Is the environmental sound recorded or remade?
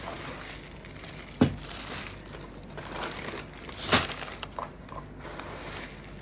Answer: recorded